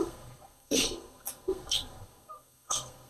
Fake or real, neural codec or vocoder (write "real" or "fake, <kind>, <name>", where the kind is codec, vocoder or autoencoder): fake, codec, SNAC